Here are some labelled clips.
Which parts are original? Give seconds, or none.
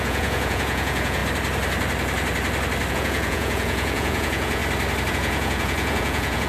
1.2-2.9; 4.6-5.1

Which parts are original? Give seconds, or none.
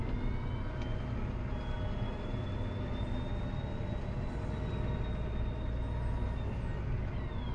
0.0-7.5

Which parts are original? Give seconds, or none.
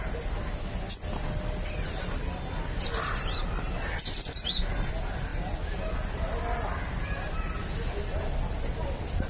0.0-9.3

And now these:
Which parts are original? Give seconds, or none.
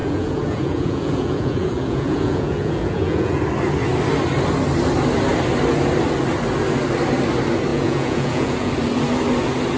3.4-7.7; 8.7-9.8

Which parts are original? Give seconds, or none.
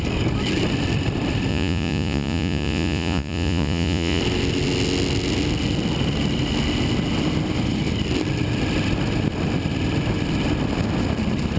0.0-1.5; 4.2-11.6